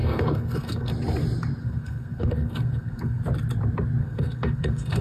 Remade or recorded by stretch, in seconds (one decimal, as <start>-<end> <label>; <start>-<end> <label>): 0.0-0.9 remade; 0.9-1.6 recorded; 1.6-3.2 remade; 3.2-4.0 recorded; 4.0-5.0 remade